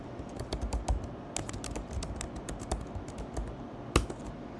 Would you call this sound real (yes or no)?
yes